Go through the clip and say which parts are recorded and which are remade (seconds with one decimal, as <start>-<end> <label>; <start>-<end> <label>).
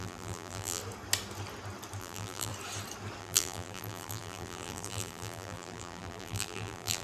0.0-0.8 remade; 0.8-2.0 recorded; 2.0-2.5 remade; 2.5-3.2 recorded; 3.2-7.0 remade